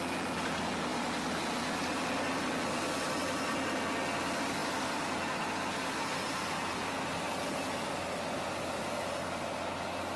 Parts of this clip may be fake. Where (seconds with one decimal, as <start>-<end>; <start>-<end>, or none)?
none